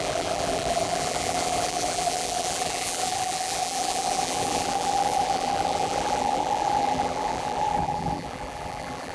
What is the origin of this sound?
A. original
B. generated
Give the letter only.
B